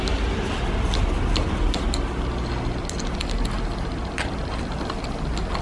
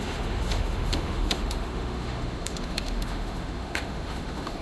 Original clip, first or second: first